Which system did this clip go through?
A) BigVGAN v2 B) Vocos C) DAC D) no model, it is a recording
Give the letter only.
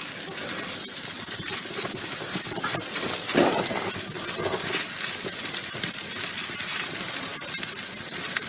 D